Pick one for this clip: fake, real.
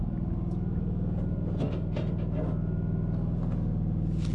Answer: real